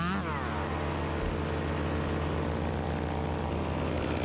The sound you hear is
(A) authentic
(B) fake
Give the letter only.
A